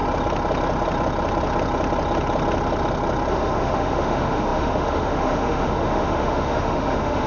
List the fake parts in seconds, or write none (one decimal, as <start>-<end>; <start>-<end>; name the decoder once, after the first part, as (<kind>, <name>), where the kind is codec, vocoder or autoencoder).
3.3-7.3 (autoencoder, DAC-VAE)